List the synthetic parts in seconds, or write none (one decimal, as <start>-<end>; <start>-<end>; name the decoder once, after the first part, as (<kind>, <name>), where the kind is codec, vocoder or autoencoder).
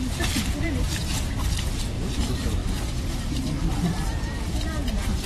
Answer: 0.0-1.1 (vocoder, BigVGAN v2); 1.9-5.3